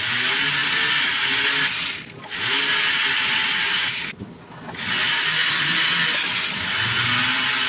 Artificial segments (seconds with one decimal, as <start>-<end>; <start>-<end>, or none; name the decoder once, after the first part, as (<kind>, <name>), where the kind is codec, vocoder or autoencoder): none